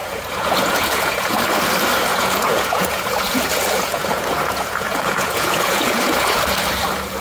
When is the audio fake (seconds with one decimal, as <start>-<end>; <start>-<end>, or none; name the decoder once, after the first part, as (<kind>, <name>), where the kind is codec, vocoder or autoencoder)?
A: 0.0-1.4 (vocoder, Vocos); 2.1-6.4